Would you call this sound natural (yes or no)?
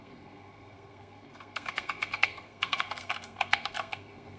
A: no